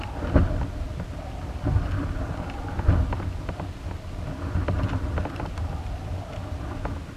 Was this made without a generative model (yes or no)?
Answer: yes